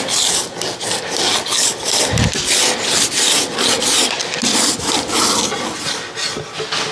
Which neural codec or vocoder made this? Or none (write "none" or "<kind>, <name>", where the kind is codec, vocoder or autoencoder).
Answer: none